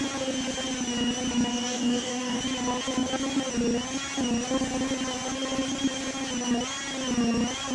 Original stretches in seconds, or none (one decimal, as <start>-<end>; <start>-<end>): 0.0-1.5; 2.4-7.7